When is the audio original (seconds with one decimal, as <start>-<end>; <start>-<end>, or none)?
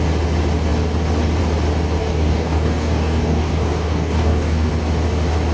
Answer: 0.0-2.0; 4.7-5.5